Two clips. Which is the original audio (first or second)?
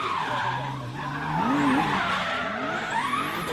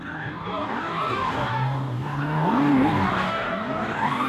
first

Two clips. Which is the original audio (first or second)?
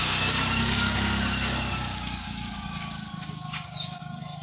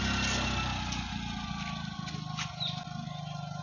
second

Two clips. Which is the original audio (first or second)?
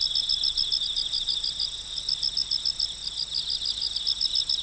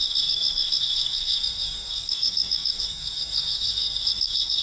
first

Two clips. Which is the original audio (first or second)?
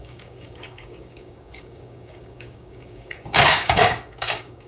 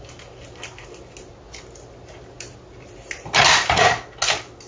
second